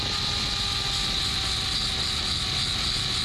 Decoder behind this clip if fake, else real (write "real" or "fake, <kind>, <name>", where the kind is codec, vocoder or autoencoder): real